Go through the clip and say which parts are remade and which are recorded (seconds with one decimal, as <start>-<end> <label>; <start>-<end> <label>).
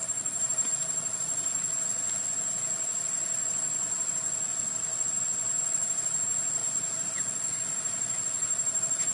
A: 0.0-0.7 remade; 0.7-6.6 recorded; 6.6-7.2 remade; 7.2-9.1 recorded